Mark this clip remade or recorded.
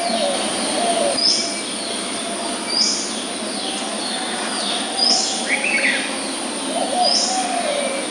recorded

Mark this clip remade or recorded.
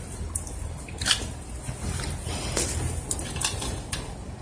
recorded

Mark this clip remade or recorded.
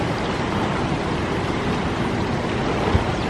recorded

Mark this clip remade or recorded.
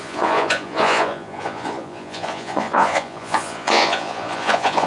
remade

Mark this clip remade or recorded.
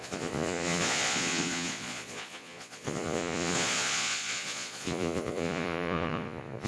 remade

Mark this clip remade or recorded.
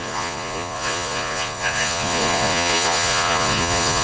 remade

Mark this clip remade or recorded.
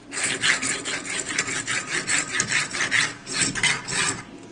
recorded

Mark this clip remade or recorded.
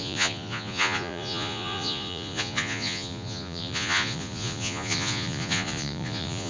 remade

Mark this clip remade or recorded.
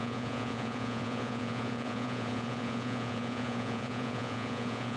remade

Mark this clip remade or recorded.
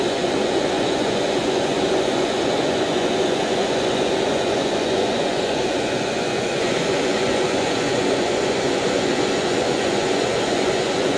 remade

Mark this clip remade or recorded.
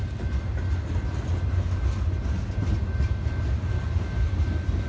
recorded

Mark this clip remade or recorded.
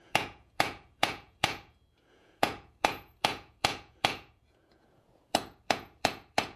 remade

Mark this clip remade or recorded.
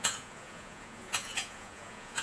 remade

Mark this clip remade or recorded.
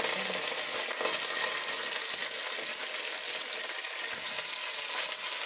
recorded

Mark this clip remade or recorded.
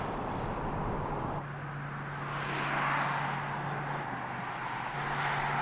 recorded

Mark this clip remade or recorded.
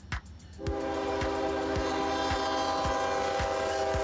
recorded